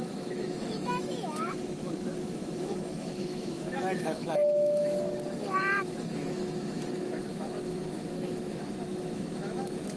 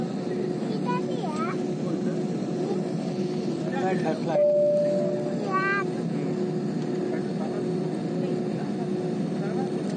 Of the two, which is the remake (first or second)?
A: first